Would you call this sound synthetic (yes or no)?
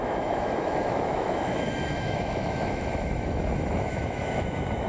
yes